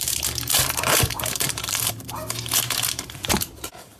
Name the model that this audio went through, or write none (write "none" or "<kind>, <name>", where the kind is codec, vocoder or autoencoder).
vocoder, BigVGAN v2